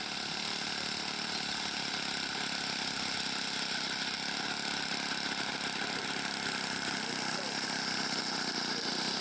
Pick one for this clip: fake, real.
real